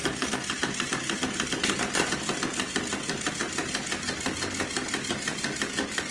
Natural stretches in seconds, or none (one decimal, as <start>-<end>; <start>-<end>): 0.0-6.1